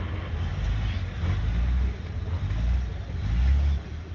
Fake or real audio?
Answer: real